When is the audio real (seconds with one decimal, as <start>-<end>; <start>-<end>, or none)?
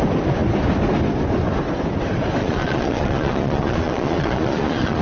0.0-2.4